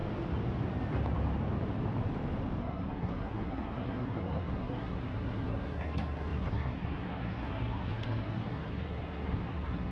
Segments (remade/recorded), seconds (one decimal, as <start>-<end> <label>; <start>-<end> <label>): 0.0-2.6 recorded; 2.6-9.9 remade